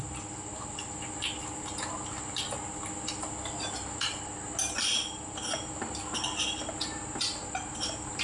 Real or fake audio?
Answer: real